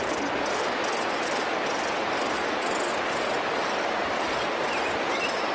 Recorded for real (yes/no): yes